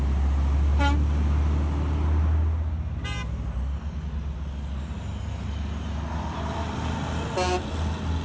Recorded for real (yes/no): yes